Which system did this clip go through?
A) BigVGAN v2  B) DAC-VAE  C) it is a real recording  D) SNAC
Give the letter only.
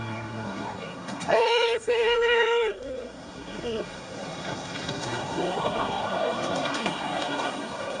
D